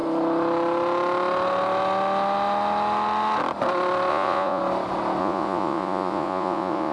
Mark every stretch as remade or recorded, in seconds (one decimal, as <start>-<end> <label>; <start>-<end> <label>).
0.0-4.1 recorded; 4.1-4.6 remade; 4.6-5.2 recorded; 5.2-6.9 remade